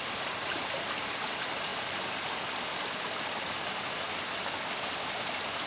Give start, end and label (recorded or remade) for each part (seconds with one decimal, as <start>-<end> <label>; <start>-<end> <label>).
0.0-5.7 recorded